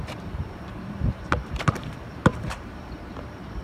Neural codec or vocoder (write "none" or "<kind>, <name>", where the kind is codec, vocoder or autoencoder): vocoder, BigVGAN v2